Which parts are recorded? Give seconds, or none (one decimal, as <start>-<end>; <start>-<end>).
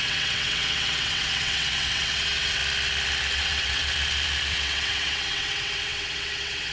2.6-3.3; 3.8-4.5